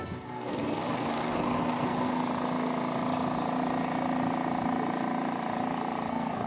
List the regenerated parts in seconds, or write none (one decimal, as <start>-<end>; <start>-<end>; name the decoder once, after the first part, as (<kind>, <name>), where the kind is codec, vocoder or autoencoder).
0.0-2.2 (codec, SNAC); 6.1-6.5